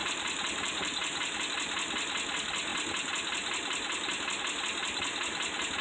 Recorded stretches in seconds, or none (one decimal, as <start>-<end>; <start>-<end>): 1.4-5.8